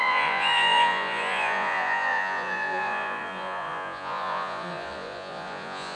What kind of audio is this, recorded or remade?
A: remade